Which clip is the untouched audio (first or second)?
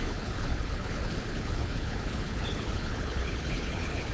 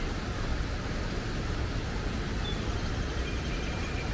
second